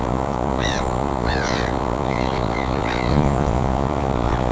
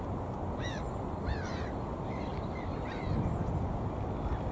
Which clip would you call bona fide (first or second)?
second